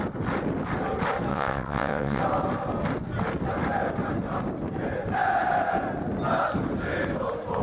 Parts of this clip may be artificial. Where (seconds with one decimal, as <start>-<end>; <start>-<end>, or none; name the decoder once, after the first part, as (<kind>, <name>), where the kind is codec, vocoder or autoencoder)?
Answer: 1.3-2.2 (vocoder, WaveNeXt)

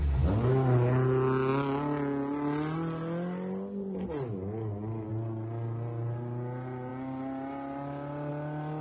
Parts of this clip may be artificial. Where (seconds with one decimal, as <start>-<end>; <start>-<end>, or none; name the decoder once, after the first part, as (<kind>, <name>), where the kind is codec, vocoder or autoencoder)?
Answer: none

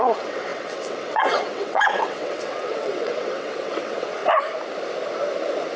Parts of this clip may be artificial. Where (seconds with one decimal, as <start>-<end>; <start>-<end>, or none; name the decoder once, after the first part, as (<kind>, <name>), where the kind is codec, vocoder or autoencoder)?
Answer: 0.0-4.2 (vocoder, WaveNeXt)

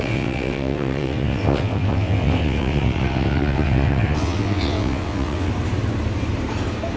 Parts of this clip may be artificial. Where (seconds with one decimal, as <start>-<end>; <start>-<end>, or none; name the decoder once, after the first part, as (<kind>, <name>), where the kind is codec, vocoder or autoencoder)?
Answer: 0.0-5.5 (vocoder, WaveNeXt)

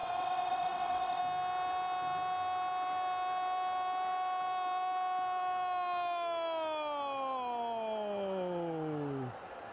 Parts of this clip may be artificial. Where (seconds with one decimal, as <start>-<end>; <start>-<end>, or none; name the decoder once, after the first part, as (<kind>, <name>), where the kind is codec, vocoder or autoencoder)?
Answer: 0.0-1.2 (vocoder, WaveNeXt)

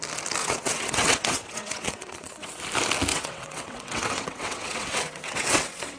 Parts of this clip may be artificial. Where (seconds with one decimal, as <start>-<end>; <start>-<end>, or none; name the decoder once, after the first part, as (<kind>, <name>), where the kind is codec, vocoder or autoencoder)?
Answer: 0.4-2.6 (vocoder, WaveNeXt); 3.1-6.0